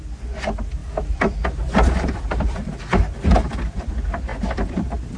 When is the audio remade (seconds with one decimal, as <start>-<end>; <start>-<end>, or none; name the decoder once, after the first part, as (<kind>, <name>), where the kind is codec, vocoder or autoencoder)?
0.8-3.9 (vocoder, BigVGAN v2); 4.3-5.2